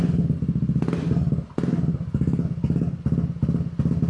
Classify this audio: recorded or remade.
recorded